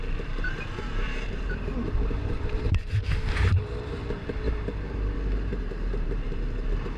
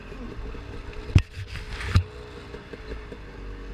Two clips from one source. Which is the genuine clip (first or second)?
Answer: second